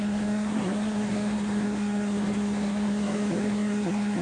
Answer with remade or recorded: remade